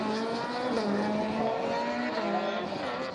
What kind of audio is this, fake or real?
real